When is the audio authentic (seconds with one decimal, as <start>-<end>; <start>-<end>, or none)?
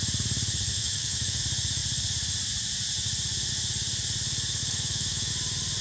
0.0-0.7; 1.4-4.6; 5.3-5.8